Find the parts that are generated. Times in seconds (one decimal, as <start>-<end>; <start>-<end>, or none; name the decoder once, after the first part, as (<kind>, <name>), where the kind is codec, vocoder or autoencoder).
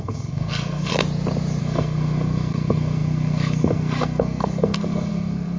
0.0-0.9 (codec, SNAC); 1.6-5.6